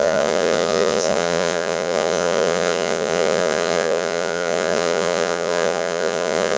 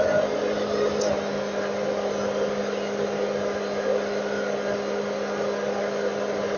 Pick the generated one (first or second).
first